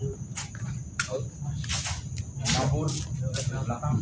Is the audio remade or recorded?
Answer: recorded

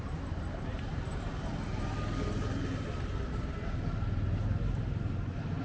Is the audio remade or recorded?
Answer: recorded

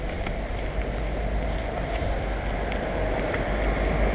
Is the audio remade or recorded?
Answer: recorded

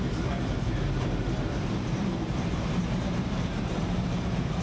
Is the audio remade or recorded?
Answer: remade